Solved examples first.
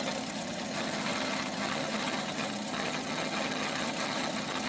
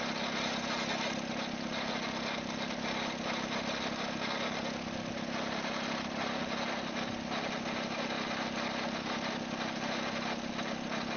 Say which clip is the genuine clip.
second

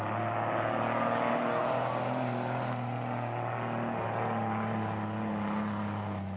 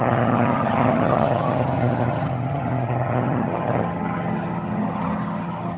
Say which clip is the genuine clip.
first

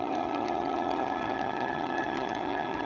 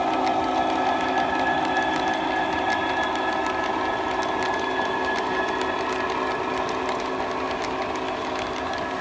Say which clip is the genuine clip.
second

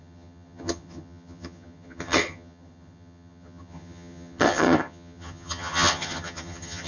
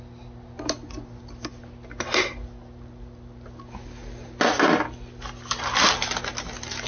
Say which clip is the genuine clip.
second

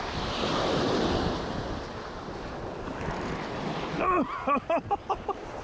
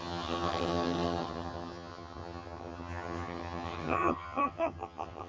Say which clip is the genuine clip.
first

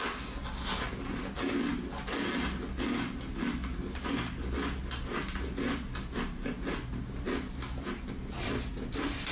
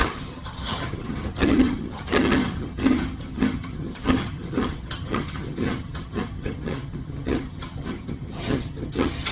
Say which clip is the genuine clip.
first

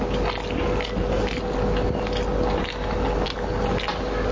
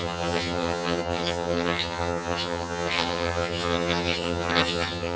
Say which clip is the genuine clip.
first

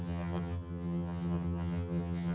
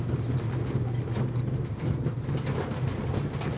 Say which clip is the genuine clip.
second